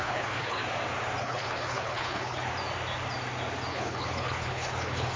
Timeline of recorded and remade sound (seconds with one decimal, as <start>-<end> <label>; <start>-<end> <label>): 0.0-0.6 remade; 0.6-1.2 recorded; 1.2-2.5 remade; 2.5-3.7 recorded; 3.7-5.2 remade